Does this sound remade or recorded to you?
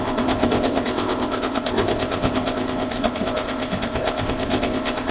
remade